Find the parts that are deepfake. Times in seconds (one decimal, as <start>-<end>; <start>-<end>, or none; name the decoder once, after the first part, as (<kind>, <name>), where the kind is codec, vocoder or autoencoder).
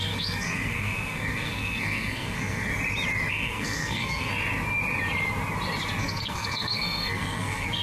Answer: 0.0-2.7 (codec, SNAC); 3.3-4.3; 6.0-7.8